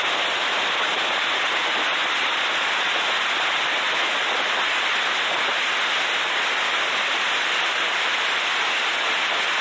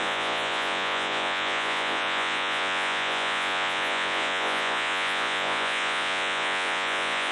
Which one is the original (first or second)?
first